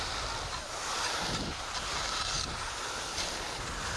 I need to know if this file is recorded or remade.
recorded